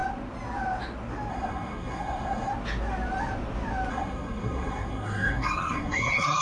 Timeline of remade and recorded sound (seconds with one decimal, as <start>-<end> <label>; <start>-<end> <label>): 0.0-1.3 recorded; 1.3-2.5 remade; 2.5-3.9 recorded; 3.9-6.4 remade